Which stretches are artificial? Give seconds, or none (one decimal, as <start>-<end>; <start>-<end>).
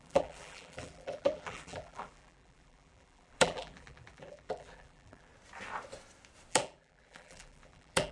0.0-5.3; 6.5-8.1